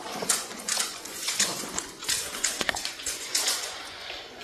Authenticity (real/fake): fake